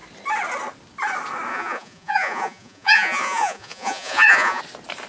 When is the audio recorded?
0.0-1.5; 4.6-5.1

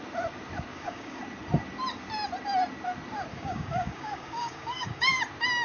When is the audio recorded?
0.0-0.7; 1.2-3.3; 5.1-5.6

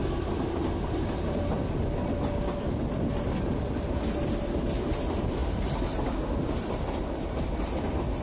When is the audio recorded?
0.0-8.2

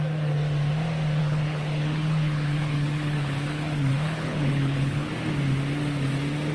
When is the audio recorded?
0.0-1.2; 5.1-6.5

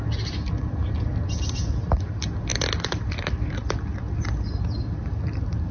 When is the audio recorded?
0.0-5.7

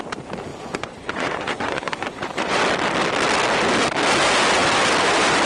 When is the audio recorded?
0.0-0.5; 2.6-5.5

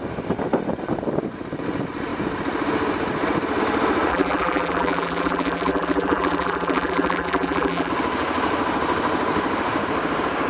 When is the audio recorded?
0.0-4.1; 7.9-10.5